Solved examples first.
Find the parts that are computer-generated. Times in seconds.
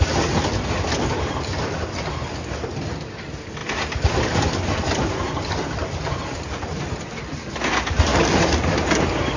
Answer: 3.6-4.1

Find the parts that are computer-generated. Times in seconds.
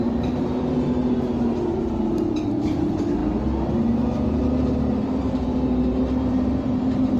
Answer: 0.0-7.2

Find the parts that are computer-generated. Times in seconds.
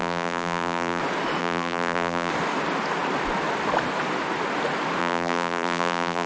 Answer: 0.0-1.0; 1.4-2.3; 5.0-6.3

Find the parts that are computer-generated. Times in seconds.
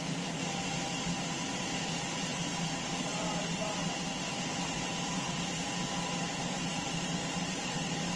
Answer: 3.1-3.7; 7.2-8.2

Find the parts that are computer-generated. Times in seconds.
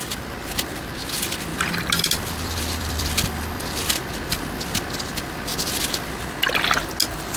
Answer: 1.5-3.8